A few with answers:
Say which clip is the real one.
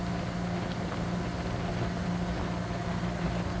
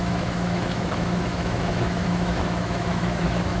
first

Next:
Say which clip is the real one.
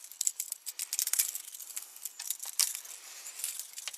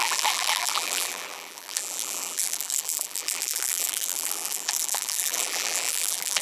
first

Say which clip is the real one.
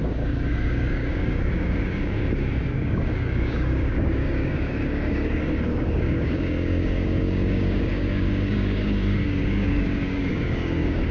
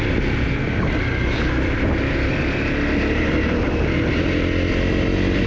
second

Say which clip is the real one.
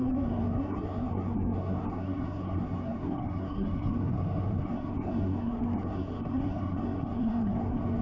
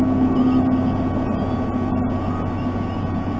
second